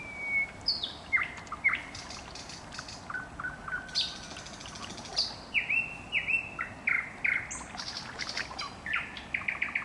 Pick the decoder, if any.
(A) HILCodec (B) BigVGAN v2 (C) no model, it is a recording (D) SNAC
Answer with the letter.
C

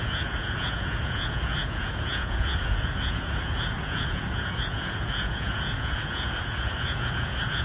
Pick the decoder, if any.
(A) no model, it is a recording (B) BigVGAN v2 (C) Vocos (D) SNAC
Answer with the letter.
C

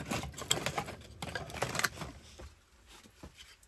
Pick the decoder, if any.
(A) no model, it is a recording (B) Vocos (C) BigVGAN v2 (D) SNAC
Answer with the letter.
A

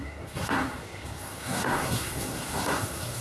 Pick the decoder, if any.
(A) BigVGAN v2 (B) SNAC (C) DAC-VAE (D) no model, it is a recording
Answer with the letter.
B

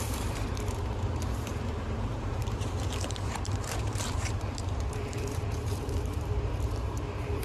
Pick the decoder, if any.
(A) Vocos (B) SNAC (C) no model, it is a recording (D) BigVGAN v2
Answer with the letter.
D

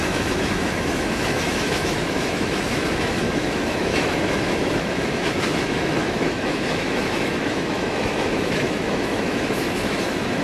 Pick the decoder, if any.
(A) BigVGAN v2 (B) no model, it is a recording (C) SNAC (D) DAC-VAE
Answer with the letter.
D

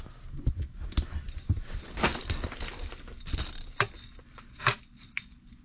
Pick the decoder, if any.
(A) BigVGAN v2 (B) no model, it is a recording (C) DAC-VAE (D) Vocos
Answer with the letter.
B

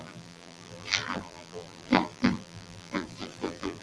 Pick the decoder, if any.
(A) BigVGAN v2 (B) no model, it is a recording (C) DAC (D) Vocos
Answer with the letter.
A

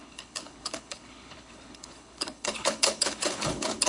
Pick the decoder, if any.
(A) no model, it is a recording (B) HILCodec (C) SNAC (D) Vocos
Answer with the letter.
B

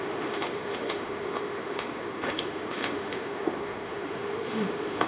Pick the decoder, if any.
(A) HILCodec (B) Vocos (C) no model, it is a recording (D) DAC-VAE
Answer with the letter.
D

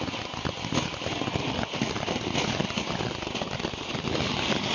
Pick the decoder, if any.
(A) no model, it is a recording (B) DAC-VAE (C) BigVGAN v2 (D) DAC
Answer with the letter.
A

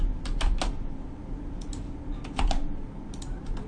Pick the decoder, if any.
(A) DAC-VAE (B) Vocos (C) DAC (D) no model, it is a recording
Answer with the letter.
D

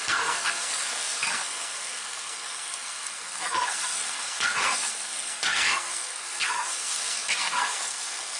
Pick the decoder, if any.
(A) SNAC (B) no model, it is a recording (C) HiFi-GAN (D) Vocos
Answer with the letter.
A